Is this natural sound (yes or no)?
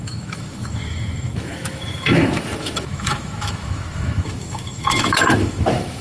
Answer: no